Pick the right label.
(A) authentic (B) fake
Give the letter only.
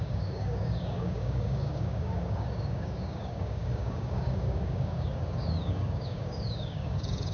B